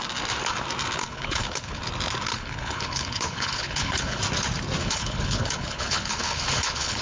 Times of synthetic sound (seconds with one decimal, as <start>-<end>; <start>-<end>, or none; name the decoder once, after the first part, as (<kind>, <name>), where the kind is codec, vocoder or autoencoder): 1.0-1.8 (codec, HILCodec); 2.3-4.2; 4.8-7.0